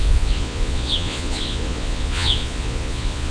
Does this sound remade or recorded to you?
remade